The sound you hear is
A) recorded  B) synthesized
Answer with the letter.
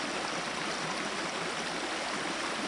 A